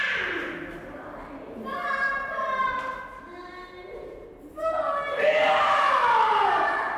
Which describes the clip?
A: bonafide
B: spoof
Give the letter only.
A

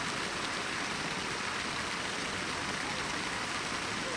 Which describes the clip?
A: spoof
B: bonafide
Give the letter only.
B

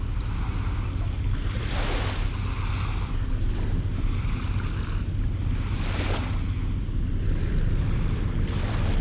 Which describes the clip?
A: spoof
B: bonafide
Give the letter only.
B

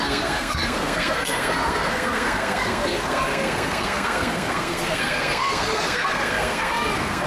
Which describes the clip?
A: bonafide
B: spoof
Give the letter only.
B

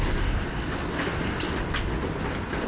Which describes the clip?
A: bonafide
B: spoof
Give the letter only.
A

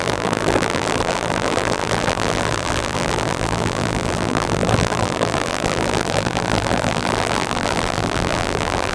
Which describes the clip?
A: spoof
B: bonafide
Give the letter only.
A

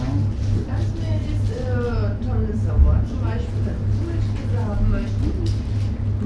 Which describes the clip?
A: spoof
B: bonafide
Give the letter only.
B